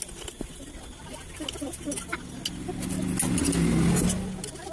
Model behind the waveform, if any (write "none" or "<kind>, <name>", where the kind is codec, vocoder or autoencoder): none